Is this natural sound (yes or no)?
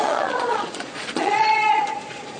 no